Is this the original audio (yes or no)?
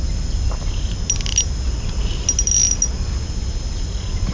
yes